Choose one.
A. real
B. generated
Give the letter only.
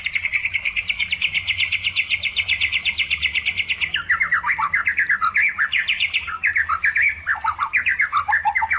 A